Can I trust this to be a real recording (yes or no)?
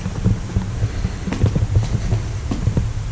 yes